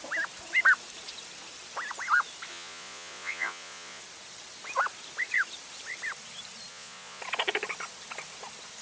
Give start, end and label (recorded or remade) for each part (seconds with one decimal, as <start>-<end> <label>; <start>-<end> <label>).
0.0-2.5 recorded; 2.5-4.0 remade; 4.0-6.7 recorded; 6.7-7.2 remade; 7.2-8.8 recorded